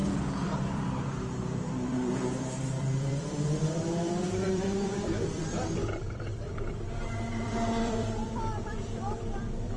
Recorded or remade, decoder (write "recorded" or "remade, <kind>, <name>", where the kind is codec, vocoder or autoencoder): remade, vocoder, BigVGAN v2